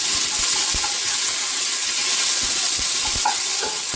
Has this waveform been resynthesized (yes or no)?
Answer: yes